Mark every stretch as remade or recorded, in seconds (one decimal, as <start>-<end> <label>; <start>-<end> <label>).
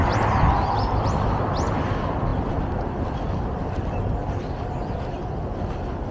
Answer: 0.0-6.1 recorded